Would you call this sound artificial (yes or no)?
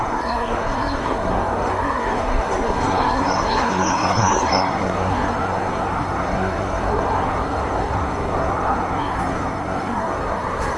yes